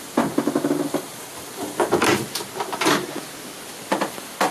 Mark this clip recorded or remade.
recorded